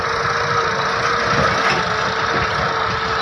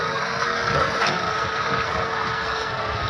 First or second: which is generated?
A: second